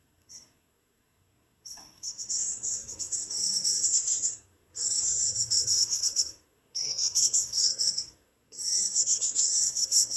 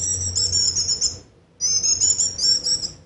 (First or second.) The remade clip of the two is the first